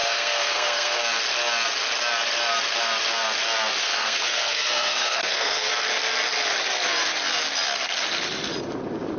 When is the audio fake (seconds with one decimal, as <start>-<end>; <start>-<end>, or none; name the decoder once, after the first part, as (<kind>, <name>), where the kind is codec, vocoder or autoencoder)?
0.0-1.0 (codec, SNAC); 3.8-5.7